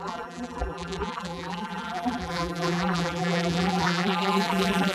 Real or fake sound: fake